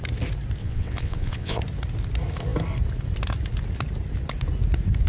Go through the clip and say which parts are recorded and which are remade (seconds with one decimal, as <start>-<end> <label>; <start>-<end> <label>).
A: 0.0-0.6 recorded; 0.6-1.6 remade; 1.6-5.1 recorded